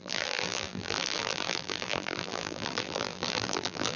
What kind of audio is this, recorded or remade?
remade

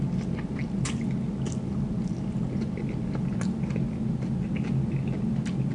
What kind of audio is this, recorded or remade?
recorded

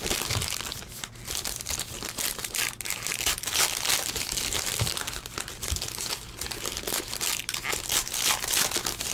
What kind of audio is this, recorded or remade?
recorded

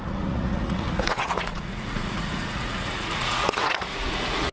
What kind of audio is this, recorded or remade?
remade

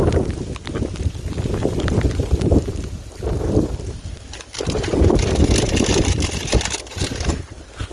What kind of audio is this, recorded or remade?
remade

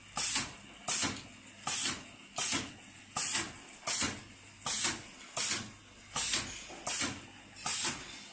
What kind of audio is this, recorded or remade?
recorded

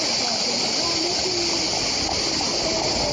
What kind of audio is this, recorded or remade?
recorded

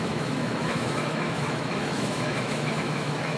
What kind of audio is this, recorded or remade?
remade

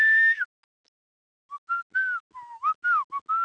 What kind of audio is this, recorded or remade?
recorded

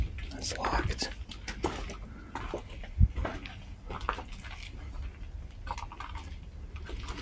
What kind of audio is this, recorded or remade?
recorded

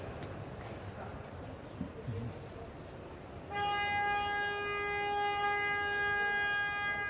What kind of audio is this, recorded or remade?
recorded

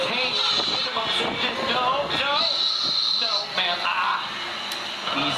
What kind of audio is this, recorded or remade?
recorded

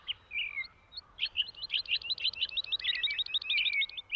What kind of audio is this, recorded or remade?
recorded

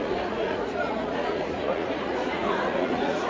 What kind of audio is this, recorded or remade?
remade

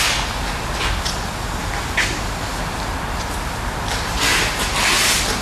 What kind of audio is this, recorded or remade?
recorded